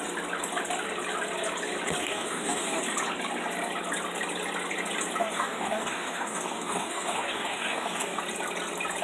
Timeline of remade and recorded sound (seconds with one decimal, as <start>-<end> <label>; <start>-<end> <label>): 0.0-2.0 recorded; 2.0-2.8 remade; 2.8-5.2 recorded; 5.2-8.2 remade; 8.2-9.0 recorded

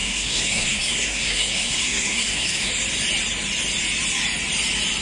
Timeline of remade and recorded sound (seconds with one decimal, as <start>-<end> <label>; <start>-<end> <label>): 0.0-2.7 remade; 2.7-5.0 recorded

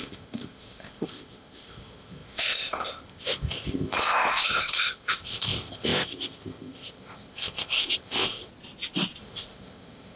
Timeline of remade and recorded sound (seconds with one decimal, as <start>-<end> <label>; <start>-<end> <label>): 0.0-8.5 remade; 8.5-9.2 recorded; 9.2-10.2 remade

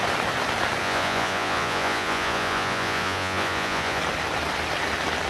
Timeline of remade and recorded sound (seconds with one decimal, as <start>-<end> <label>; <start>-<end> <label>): 0.0-0.8 recorded; 0.8-4.0 remade; 4.0-5.3 recorded

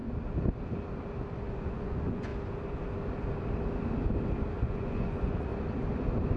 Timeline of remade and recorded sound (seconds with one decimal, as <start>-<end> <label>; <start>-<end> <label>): 0.0-1.5 recorded; 1.5-2.3 remade; 2.3-4.6 recorded; 4.6-5.5 remade; 5.5-6.4 recorded

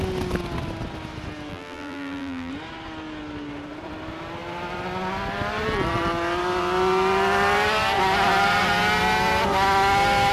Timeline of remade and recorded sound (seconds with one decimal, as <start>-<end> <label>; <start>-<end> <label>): 0.0-1.5 recorded; 1.5-2.5 remade; 2.5-10.3 recorded